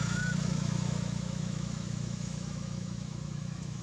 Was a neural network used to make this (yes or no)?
yes